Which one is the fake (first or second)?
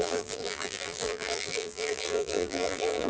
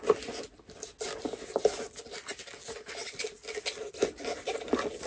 first